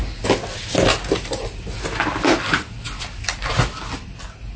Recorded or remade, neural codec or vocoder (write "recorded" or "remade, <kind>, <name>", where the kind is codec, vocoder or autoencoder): recorded